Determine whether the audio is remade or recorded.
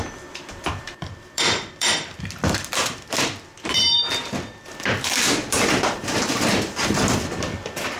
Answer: remade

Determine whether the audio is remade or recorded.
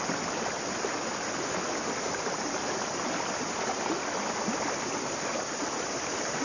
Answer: recorded